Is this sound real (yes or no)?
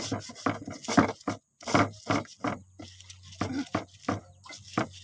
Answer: yes